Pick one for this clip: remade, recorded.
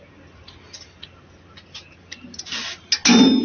recorded